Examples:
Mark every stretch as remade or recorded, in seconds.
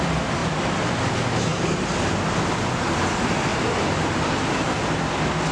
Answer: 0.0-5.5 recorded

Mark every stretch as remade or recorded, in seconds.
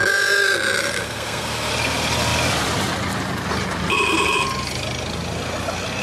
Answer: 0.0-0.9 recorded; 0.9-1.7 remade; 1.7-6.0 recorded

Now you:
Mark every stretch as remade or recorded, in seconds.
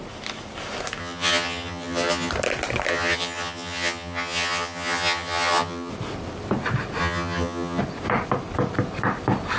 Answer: 0.0-1.0 recorded; 1.0-2.3 remade; 2.3-2.9 recorded; 2.9-5.9 remade; 5.9-7.0 recorded; 7.0-7.8 remade; 7.8-9.6 recorded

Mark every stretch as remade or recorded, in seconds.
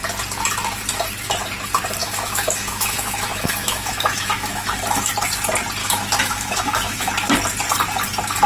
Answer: 0.0-2.0 recorded; 2.0-5.1 remade; 5.1-5.8 recorded; 5.8-7.1 remade; 7.1-8.5 recorded